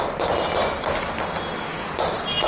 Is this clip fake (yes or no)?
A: no